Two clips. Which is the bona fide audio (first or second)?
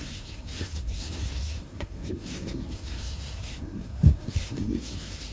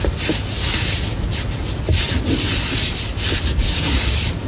second